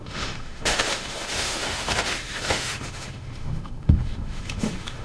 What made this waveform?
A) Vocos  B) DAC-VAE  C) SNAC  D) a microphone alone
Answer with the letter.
B